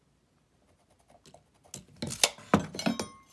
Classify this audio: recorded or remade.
recorded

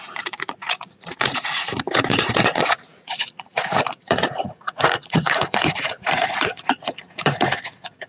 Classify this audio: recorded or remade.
remade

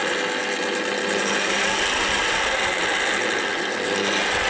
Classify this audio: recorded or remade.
recorded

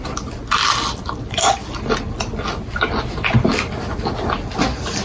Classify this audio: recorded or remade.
recorded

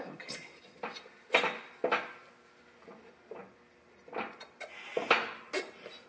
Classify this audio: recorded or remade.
recorded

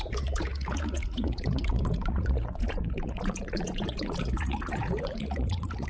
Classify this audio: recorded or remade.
remade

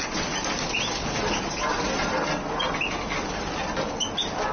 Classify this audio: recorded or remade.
recorded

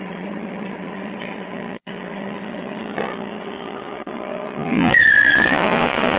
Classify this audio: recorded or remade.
remade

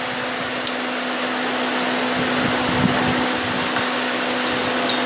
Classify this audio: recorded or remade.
recorded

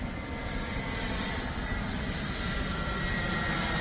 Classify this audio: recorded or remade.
recorded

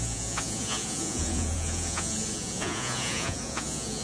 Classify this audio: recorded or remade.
remade